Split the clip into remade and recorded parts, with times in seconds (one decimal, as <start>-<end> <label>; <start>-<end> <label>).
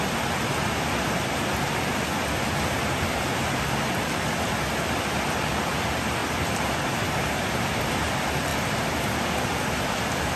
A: 0.0-6.2 recorded; 6.2-7.1 remade; 7.1-8.5 recorded; 8.5-10.4 remade